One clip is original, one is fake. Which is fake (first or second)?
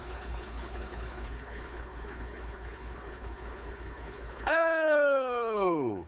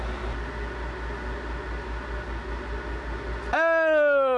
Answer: first